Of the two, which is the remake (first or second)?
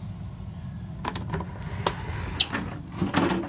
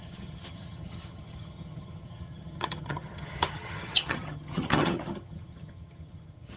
second